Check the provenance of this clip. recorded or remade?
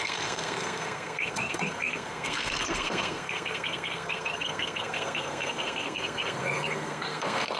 remade